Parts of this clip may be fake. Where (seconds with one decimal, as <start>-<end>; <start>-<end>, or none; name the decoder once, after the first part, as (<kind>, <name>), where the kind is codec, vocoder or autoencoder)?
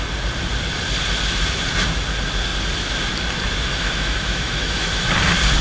3.7-5.1 (autoencoder, DAC-VAE)